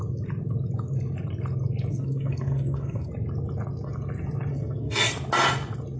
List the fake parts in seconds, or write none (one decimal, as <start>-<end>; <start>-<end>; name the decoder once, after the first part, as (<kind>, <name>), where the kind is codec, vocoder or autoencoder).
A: 1.9-3.1 (codec, SNAC); 4.5-5.1